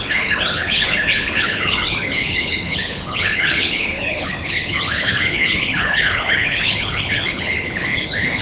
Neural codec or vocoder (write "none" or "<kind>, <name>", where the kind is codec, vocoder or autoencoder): codec, HILCodec